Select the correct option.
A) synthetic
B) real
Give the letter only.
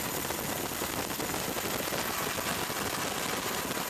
B